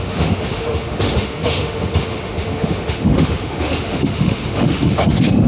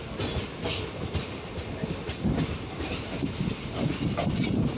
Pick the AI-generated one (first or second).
first